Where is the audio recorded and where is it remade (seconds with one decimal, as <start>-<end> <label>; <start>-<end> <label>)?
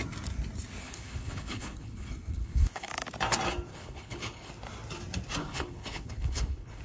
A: 0.0-0.8 recorded; 0.8-2.9 remade; 2.9-3.7 recorded; 3.7-4.5 remade; 4.5-5.4 recorded; 5.4-6.8 remade